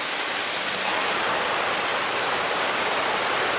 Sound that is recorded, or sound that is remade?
recorded